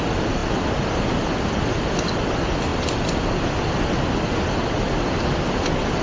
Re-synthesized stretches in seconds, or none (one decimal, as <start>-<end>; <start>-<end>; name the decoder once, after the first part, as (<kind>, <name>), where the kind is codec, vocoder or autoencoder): none